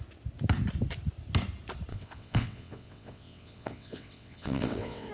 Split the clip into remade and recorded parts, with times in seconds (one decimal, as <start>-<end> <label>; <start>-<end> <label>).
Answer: 0.0-1.9 recorded; 1.9-5.1 remade

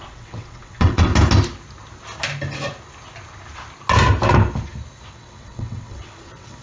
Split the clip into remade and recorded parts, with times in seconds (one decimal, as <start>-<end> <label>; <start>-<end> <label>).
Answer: 0.0-1.1 remade; 1.1-5.1 recorded; 5.1-6.6 remade

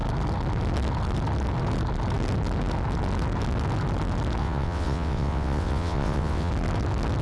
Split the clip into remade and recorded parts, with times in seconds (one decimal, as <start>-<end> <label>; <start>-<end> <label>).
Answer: 0.0-4.4 recorded; 4.4-6.5 remade; 6.5-7.2 recorded